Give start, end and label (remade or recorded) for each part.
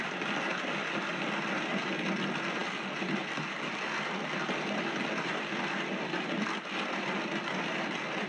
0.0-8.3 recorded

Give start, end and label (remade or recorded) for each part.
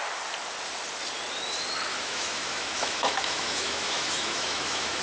0.0-1.9 recorded; 1.9-5.0 remade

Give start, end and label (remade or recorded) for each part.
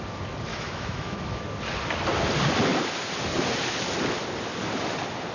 0.0-0.5 recorded; 0.5-1.4 remade; 1.4-5.3 recorded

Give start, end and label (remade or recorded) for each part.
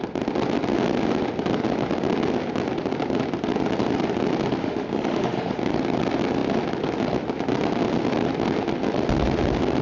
0.0-4.6 recorded; 4.6-5.6 remade; 5.6-9.8 recorded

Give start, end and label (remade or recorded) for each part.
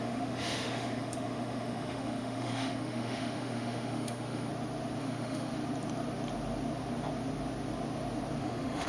0.0-4.5 remade; 4.5-5.0 recorded; 5.0-5.5 remade; 5.5-8.4 recorded; 8.4-8.9 remade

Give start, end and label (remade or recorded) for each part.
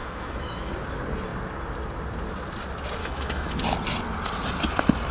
0.0-0.7 remade; 0.7-3.0 recorded; 3.0-3.6 remade; 3.6-5.1 recorded